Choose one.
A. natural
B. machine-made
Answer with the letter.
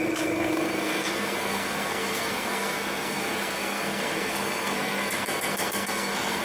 B